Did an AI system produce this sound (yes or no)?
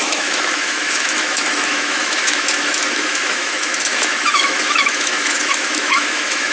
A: yes